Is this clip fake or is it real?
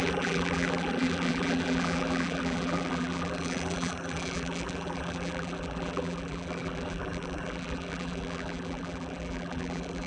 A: fake